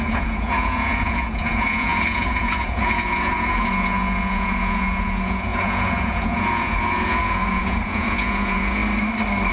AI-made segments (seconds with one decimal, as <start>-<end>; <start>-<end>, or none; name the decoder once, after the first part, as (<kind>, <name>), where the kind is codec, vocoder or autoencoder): 0.0-8.8 (vocoder, Vocos)